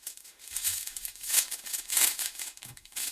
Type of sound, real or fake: fake